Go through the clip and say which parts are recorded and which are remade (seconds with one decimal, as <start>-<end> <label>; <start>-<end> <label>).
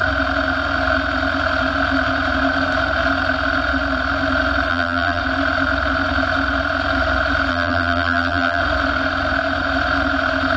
0.0-4.7 recorded; 4.7-5.2 remade; 5.2-7.5 recorded; 7.5-8.6 remade; 8.6-10.6 recorded